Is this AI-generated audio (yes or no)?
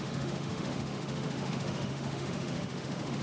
yes